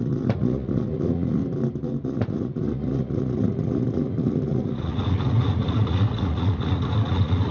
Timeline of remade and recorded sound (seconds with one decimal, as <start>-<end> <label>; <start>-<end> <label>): 0.0-1.4 remade; 1.4-2.0 recorded; 2.0-7.5 remade